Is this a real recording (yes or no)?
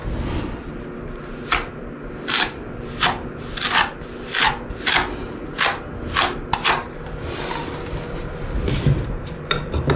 yes